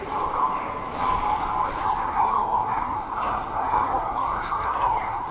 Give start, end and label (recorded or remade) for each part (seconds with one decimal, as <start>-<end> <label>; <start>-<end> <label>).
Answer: 0.0-1.8 recorded; 1.8-5.3 remade